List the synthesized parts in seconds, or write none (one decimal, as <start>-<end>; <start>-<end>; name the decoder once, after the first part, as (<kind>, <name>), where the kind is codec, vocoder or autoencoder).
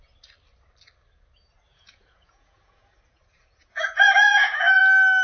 1.7-4.8 (vocoder, Vocos)